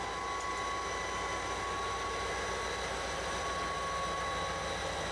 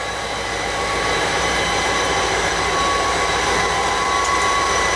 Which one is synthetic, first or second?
second